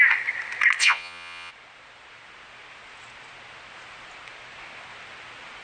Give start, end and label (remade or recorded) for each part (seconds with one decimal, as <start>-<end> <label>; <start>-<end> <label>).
0.0-0.8 recorded; 0.8-1.5 remade; 1.5-5.6 recorded